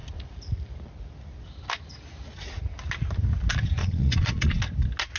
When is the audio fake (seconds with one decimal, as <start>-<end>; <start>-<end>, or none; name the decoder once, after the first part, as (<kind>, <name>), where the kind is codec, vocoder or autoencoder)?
3.8-4.6 (vocoder, Vocos)